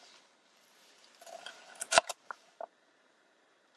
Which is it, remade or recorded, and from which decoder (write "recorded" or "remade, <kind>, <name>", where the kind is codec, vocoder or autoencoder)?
remade, vocoder, BigVGAN v2